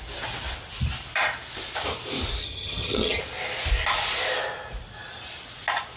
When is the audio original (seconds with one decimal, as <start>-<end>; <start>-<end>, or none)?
0.0-2.4; 3.2-6.0